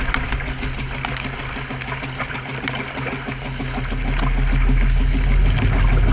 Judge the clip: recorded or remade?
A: recorded